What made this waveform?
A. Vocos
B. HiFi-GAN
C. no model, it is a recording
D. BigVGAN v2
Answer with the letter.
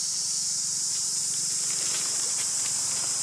D